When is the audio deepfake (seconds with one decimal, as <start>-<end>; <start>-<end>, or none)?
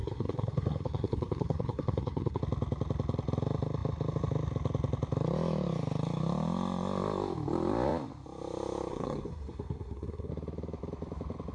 0.0-2.4; 8.9-10.3